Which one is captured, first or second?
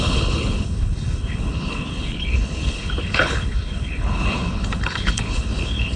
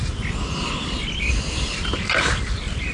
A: second